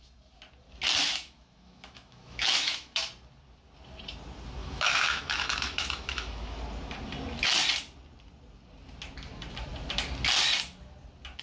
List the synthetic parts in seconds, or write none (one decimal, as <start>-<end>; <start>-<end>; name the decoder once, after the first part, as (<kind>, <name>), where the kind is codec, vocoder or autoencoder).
1.0-3.1 (autoencoder, DAC-VAE); 4.6-6.6